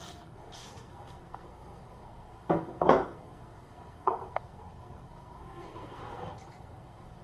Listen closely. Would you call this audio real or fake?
fake